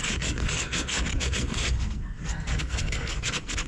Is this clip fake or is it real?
fake